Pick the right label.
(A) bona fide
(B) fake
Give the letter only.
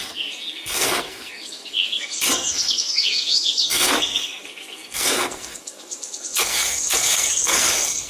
B